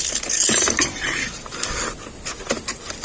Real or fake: real